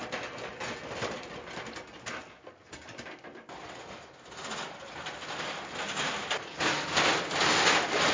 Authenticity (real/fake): real